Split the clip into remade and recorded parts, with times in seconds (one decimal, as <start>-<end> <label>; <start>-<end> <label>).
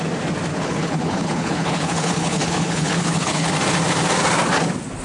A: 0.0-0.5 recorded; 0.5-3.5 remade; 3.5-5.0 recorded